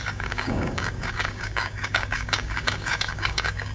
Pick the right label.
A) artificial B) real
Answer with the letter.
A